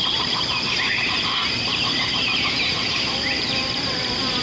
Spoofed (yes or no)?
yes